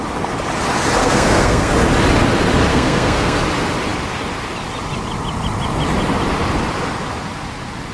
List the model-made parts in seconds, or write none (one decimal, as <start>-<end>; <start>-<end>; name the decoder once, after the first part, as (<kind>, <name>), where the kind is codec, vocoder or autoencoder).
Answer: 1.0-1.7 (codec, SNAC); 2.7-3.4